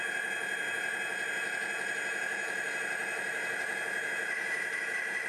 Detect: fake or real real